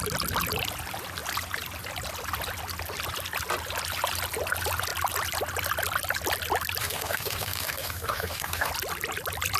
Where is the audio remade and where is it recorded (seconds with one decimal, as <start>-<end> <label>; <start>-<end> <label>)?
0.0-6.8 recorded; 6.8-8.7 remade; 8.7-9.6 recorded